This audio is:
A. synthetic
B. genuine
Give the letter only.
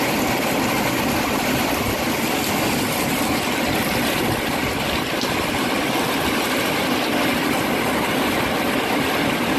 B